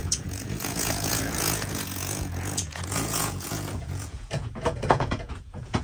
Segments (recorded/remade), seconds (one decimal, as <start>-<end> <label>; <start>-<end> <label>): 0.0-5.8 remade